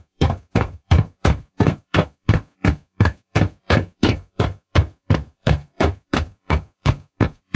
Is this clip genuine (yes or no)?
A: no